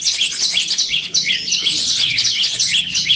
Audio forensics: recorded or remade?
remade